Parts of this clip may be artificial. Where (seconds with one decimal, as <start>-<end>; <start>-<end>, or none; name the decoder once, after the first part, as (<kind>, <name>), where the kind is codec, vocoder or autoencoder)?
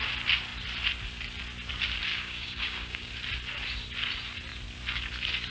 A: 2.1-3.1 (codec, DAC)